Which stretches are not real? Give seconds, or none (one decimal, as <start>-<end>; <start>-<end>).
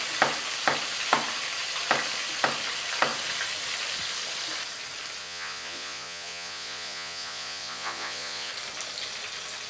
5.2-8.5